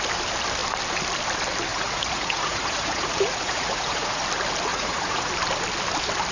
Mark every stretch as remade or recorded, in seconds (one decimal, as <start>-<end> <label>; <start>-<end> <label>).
0.0-1.7 recorded; 1.7-4.2 remade; 4.2-4.7 recorded; 4.7-5.3 remade; 5.3-6.3 recorded